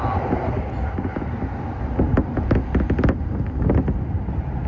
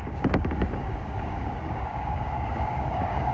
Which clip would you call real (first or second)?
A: first